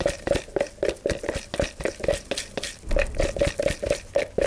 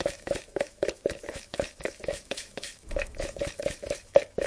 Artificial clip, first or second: second